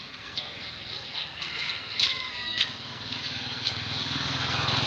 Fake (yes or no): yes